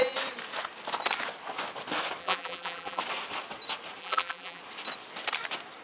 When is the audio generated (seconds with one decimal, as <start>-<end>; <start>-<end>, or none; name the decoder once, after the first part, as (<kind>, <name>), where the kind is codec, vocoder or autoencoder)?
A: 2.2-3.0 (vocoder, BigVGAN v2); 4.0-4.6